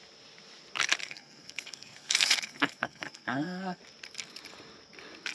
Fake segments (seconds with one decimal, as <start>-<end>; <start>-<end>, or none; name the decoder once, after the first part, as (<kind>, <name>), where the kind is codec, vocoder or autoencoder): 1.0-3.8 (codec, SNAC)